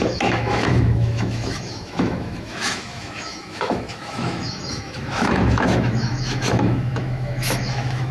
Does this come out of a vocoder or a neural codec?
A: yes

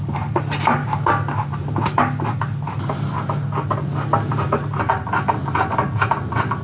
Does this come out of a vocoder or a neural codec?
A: no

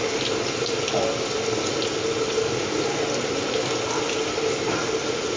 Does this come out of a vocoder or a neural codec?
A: no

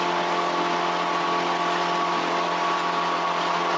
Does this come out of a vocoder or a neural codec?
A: no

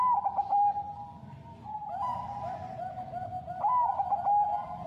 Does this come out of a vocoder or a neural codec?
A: no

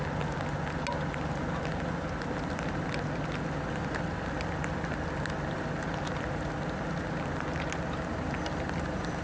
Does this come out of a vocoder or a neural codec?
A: no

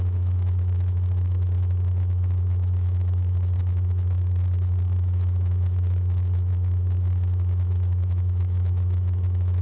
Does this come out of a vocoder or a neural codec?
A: yes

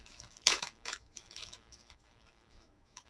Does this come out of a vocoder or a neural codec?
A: yes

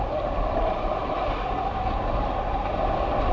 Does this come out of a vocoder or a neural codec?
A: no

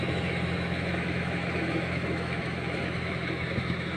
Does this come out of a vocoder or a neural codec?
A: yes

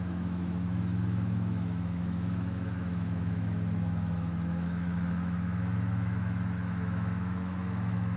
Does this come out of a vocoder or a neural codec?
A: yes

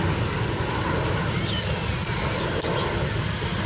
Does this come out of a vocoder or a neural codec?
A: no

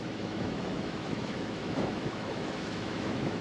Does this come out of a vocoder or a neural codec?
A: yes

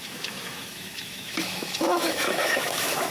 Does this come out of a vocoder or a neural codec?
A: yes